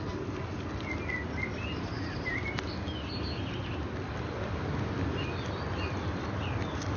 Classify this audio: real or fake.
real